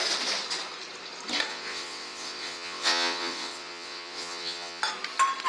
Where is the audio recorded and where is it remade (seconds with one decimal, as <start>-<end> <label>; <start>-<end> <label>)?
0.0-1.5 recorded; 1.5-4.8 remade; 4.8-5.5 recorded